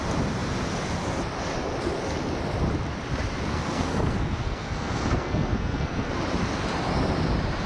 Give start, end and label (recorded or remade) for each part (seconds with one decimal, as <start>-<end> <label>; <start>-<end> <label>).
0.0-3.5 recorded; 3.5-6.1 remade; 6.1-7.7 recorded